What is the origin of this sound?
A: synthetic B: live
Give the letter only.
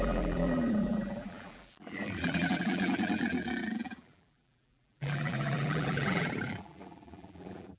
A